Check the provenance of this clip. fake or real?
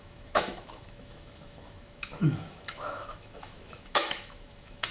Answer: fake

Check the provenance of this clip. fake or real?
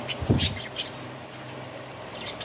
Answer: fake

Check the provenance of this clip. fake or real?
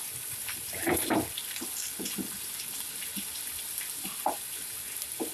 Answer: real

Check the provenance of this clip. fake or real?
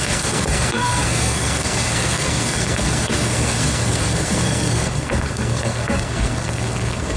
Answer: fake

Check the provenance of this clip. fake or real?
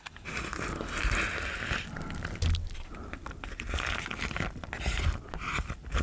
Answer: real